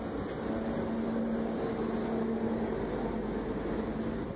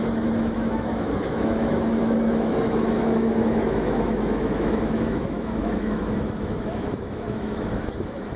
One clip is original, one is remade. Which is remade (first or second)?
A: second